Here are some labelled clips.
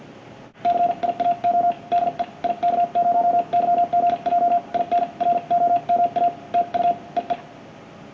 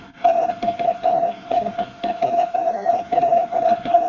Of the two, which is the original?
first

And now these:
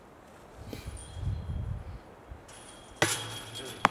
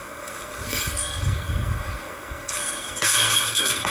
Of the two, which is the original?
first